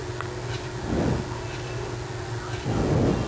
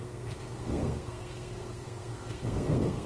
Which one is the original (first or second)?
first